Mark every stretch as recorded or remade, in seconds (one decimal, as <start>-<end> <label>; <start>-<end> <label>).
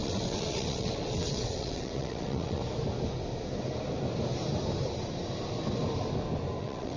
0.0-2.6 remade; 2.6-6.6 recorded; 6.6-7.0 remade